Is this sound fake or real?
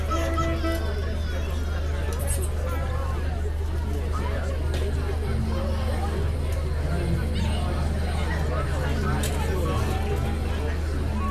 real